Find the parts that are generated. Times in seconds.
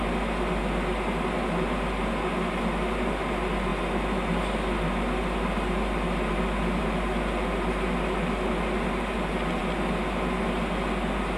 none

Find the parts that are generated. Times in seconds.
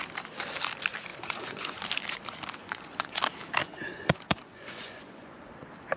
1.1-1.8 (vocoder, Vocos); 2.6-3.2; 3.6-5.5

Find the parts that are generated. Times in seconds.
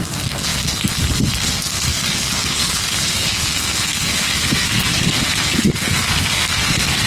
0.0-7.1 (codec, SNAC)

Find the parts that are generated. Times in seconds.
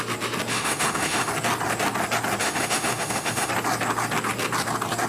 0.5-1.3 (autoencoder, DAC-VAE); 2.4-3.5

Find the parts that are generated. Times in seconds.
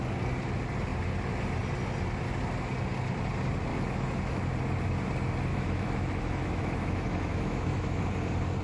3.7-4.4 (autoencoder, DAC-VAE); 5.5-8.0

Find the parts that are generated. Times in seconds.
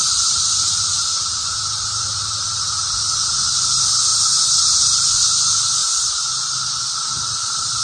0.0-2.8 (vocoder, BigVGAN v2); 4.1-5.1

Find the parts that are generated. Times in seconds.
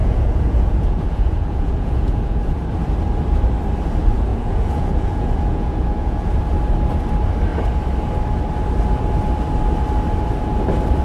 0.0-2.6 (vocoder, Vocos); 4.3-6.3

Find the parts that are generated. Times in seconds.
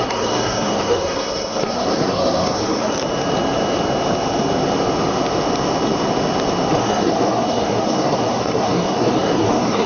0.0-2.9 (codec, SNAC); 6.7-9.9